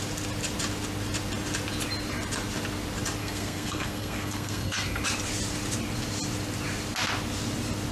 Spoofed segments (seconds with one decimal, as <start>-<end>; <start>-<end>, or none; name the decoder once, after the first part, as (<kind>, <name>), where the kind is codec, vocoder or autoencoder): 3.2-5.0 (codec, SNAC)